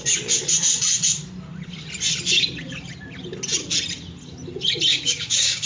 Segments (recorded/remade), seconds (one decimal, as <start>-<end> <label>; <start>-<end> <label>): 0.0-4.9 recorded; 4.9-5.7 remade